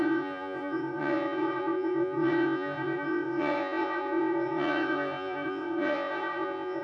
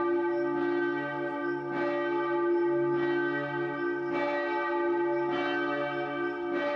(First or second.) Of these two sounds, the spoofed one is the first